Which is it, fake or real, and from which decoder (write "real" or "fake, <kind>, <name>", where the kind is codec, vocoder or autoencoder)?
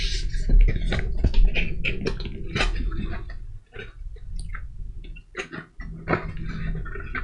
real